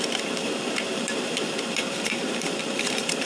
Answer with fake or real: fake